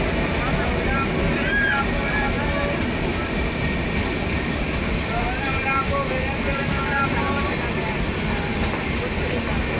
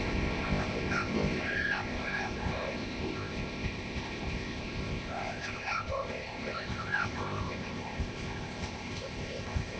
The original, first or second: first